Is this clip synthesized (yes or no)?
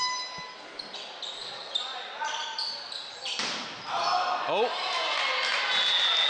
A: no